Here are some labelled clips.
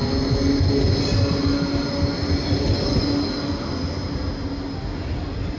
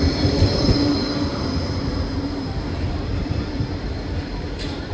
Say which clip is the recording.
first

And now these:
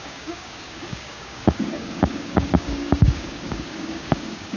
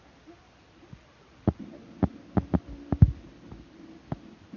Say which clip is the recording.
second